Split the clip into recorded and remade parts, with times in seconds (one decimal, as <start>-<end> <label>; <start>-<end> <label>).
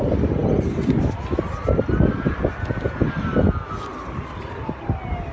0.0-5.3 recorded